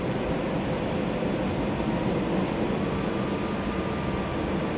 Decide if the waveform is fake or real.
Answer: real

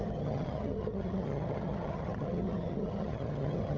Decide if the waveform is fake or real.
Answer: fake